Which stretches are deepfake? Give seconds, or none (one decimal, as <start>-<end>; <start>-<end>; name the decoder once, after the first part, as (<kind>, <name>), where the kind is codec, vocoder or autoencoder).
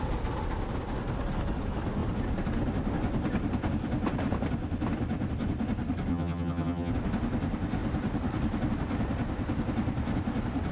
6.1-6.9 (vocoder, HiFi-GAN)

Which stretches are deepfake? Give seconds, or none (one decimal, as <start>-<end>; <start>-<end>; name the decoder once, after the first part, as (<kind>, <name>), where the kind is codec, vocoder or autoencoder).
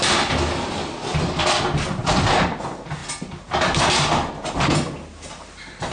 none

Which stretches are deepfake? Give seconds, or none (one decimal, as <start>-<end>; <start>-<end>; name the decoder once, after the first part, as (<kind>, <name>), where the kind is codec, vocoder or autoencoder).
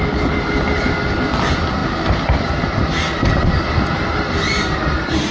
none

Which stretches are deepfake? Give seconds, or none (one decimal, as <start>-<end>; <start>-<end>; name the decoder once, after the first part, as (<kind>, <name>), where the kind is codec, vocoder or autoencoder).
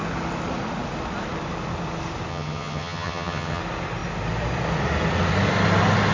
2.3-3.6 (vocoder, HiFi-GAN)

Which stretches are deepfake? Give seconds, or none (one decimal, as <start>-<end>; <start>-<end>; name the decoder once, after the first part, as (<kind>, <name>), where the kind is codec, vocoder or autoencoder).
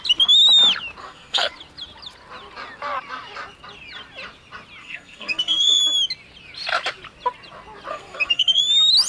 1.0-1.5 (codec, SNAC); 4.8-5.8; 7.9-8.6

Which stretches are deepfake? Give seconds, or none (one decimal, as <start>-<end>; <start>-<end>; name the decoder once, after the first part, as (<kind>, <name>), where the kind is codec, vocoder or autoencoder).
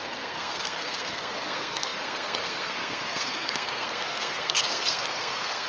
0.0-5.7 (codec, SNAC)